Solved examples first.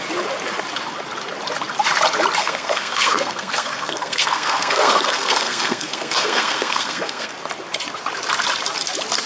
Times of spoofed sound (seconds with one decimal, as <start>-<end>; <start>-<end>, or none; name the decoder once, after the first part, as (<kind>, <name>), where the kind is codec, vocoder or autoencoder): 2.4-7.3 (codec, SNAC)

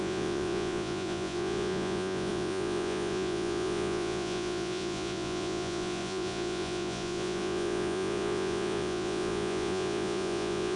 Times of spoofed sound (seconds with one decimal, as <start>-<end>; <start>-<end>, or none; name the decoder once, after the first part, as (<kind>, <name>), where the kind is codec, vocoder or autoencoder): 0.0-10.8 (vocoder, Vocos)

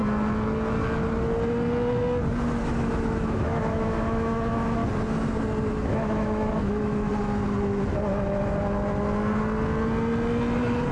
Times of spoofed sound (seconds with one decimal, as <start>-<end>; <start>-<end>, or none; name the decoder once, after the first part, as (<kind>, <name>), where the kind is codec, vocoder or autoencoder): 2.6-4.8 (autoencoder, DAC-VAE); 5.7-7.1